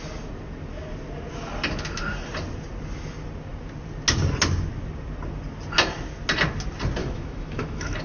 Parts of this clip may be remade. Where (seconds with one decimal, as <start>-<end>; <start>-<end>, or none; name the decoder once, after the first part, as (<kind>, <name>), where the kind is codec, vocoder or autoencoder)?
7.0-8.0 (autoencoder, DAC-VAE)